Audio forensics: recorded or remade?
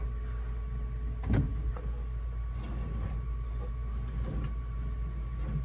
recorded